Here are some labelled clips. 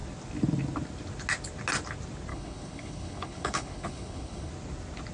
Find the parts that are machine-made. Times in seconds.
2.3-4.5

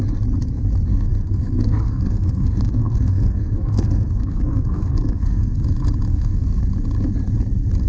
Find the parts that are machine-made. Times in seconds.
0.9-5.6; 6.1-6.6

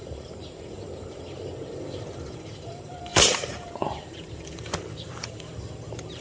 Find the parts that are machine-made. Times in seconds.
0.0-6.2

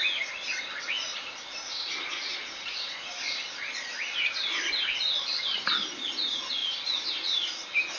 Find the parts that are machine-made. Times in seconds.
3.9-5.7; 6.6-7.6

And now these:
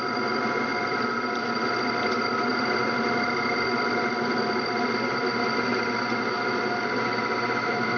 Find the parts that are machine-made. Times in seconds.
none

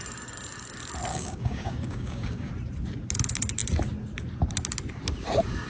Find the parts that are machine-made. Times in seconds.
1.1-2.5

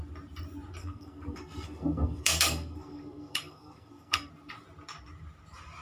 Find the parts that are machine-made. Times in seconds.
0.8-4.3